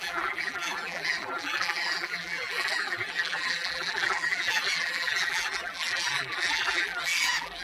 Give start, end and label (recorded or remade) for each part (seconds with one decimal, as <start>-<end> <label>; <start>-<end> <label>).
0.0-7.6 remade